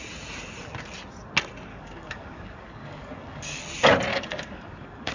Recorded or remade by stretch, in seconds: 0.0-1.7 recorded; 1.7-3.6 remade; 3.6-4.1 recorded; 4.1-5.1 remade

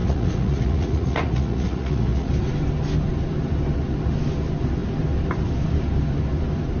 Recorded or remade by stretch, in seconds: 0.0-2.3 remade; 2.3-6.8 recorded

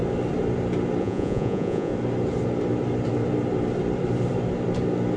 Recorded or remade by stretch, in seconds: 0.0-1.0 recorded; 1.0-1.9 remade; 1.9-5.2 recorded

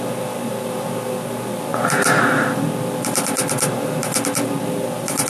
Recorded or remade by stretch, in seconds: 0.0-5.3 recorded